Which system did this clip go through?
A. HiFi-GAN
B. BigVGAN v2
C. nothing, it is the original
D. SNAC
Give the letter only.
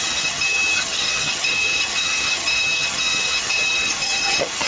A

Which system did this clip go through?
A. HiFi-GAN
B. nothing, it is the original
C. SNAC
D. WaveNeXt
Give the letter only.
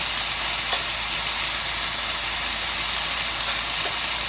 B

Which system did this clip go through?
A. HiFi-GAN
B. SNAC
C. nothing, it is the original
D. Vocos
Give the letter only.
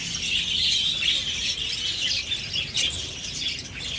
C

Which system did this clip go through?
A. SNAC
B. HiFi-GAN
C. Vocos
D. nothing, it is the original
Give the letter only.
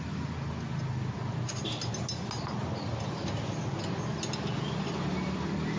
D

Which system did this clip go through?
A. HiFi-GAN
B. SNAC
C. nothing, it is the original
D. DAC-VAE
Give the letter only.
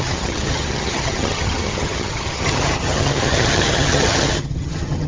A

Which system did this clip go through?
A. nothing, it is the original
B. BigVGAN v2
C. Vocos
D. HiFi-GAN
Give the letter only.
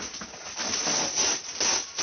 A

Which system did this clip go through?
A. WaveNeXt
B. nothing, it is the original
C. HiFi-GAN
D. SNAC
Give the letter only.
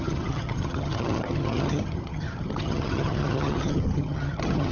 C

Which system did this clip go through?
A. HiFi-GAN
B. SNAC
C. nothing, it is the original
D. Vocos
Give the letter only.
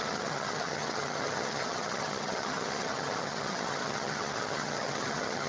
A